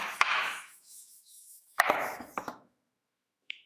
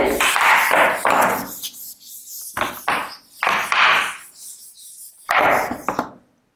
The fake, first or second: first